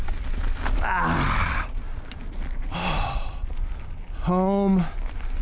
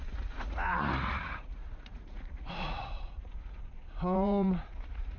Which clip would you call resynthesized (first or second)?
second